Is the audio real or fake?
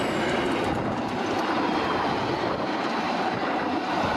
real